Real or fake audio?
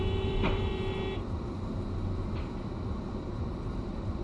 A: fake